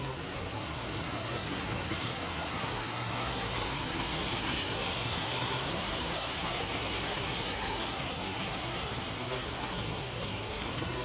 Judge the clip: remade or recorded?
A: remade